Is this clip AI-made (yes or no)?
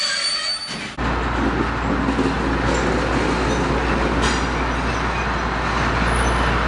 no